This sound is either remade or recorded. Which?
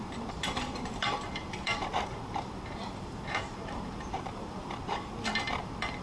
remade